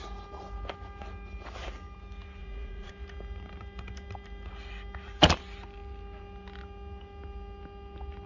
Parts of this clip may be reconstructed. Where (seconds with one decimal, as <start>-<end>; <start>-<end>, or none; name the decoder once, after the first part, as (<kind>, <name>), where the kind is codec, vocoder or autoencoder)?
2.4-2.9 (vocoder, Vocos)